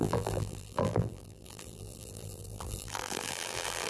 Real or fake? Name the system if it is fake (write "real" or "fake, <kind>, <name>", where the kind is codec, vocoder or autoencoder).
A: fake, vocoder, BigVGAN v2